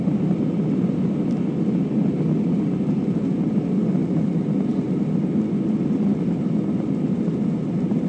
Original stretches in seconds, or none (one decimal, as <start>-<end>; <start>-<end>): 0.0-4.0; 5.0-8.1